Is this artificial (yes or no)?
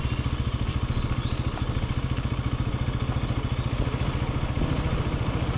no